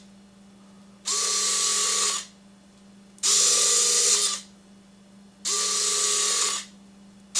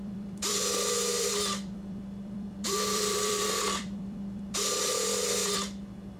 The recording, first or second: first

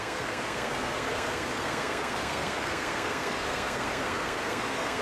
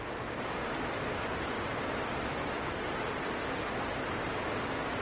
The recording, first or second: second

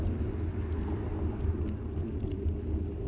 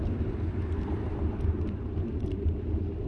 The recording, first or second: first